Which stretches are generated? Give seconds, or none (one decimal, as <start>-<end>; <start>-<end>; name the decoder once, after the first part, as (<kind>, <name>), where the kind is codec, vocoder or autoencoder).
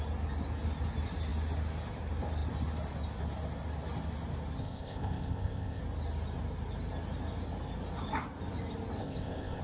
4.6-5.8 (codec, ZipCodec); 9.0-9.6